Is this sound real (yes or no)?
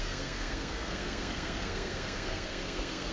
no